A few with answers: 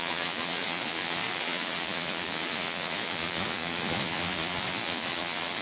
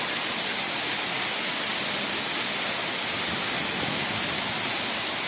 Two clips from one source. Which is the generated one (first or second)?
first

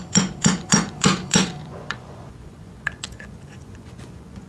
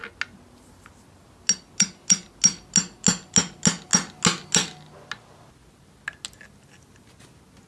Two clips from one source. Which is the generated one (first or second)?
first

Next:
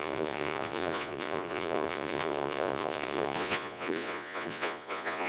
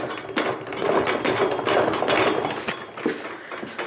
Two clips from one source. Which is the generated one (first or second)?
first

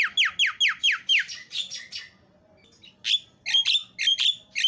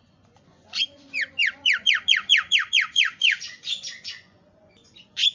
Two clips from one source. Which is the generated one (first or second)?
second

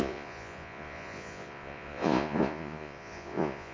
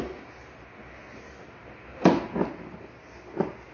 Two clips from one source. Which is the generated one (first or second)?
first